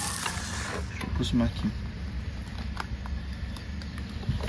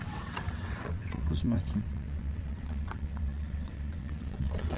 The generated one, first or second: second